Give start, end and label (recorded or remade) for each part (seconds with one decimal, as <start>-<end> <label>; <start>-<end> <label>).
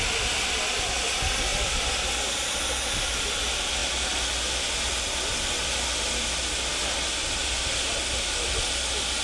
0.0-9.2 recorded